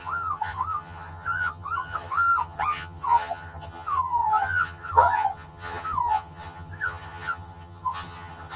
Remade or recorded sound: remade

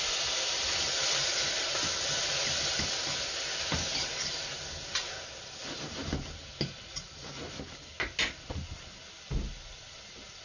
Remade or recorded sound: recorded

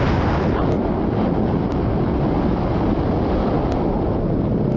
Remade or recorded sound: recorded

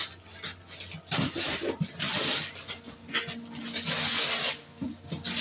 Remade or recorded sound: recorded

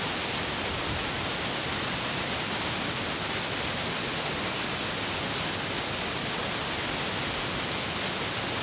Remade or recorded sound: recorded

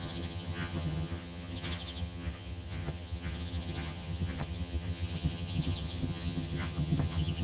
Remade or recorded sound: remade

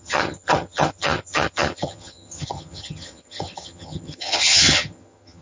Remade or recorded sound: remade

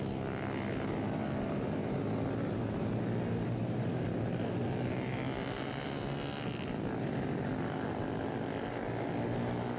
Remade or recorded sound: recorded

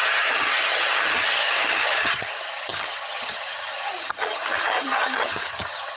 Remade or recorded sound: remade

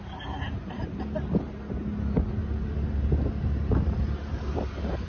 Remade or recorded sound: recorded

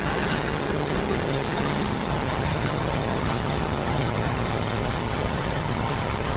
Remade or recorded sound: remade